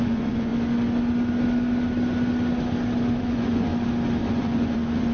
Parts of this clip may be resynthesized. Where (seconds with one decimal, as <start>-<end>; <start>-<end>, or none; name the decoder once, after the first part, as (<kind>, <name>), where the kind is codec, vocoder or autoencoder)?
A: 0.0-0.5 (vocoder, Vocos); 3.2-3.7; 4.3-5.1